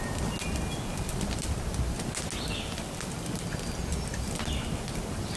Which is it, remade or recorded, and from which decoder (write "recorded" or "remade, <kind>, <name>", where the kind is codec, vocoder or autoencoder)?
recorded